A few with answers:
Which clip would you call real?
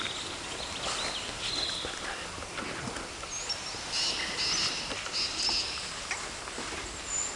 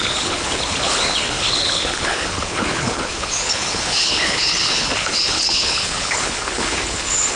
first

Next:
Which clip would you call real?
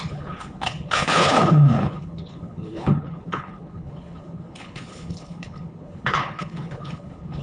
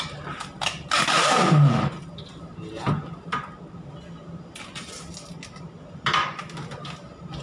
second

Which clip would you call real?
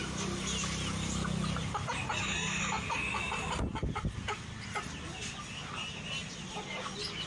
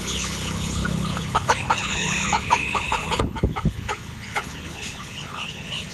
first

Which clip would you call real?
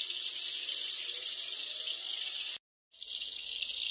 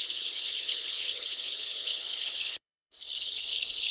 first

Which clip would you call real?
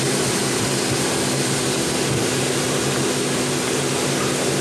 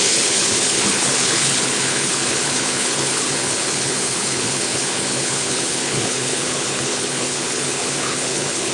first